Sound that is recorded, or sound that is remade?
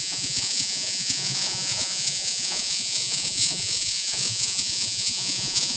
remade